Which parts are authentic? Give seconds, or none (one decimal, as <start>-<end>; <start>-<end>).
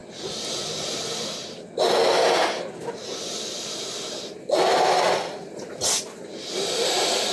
0.0-0.5